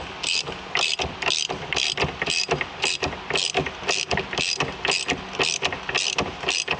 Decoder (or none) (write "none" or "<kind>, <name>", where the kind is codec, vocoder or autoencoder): none